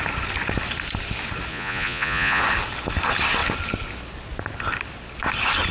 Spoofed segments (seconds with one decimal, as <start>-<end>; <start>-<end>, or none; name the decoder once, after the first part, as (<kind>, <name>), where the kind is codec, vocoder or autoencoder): 1.5-2.4 (vocoder, Vocos)

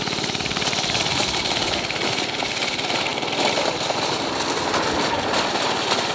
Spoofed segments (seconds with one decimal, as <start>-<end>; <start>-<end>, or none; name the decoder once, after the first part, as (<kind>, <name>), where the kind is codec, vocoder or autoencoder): none

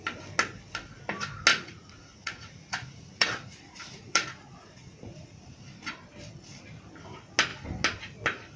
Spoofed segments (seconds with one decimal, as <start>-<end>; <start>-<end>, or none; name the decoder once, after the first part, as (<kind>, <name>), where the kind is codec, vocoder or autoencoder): 1.5-5.6 (vocoder, Vocos)

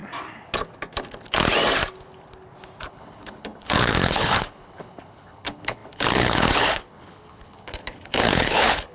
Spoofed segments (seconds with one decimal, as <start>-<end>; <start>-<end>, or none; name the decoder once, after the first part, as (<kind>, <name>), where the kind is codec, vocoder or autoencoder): 2.8-8.9 (codec, HILCodec)

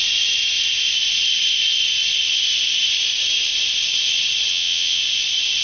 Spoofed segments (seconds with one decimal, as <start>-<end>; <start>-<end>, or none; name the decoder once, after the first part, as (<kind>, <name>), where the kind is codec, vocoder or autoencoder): 4.5-5.0 (vocoder, WaveNeXt)